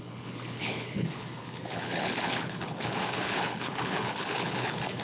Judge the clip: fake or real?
fake